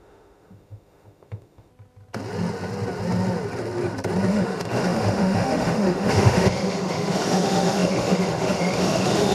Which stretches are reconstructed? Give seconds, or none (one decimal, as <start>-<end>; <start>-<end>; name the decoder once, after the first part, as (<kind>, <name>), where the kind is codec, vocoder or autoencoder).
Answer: 0.0-1.7 (autoencoder, DAC-VAE); 4.3-9.3

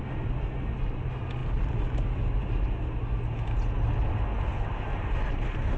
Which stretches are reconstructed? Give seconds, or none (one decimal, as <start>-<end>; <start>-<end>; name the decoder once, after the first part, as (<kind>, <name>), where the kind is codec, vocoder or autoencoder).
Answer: none

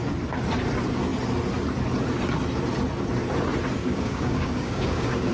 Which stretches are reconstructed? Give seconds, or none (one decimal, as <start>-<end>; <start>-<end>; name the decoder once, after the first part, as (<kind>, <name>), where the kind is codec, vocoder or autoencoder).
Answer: 3.8-5.3 (codec, DAC)

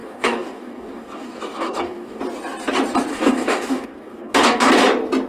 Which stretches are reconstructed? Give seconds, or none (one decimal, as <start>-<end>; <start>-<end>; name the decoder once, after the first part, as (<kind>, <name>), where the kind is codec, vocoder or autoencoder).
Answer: 0.0-2.2 (codec, DAC); 3.1-4.7

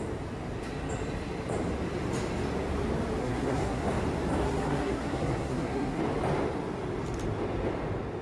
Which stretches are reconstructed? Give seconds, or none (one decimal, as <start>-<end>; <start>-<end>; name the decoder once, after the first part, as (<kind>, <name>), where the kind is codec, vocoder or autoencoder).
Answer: 3.2-3.9 (codec, SNAC); 4.4-6.0

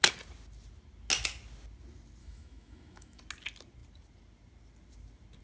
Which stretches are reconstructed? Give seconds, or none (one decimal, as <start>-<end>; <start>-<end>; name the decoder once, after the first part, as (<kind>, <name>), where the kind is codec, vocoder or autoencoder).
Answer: 2.2-3.2 (autoencoder, DAC-VAE)